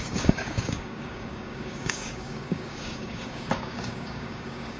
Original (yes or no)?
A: no